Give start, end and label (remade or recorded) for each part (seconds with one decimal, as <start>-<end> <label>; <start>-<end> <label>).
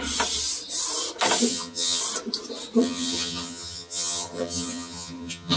0.0-1.5 recorded; 1.5-2.0 remade; 2.0-2.8 recorded; 2.8-5.6 remade